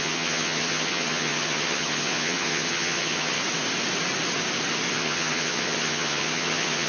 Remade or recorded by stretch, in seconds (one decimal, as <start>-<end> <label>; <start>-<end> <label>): 0.0-3.4 remade; 3.4-4.9 recorded; 4.9-6.9 remade